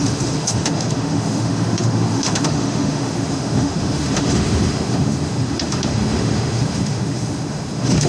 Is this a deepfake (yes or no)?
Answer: yes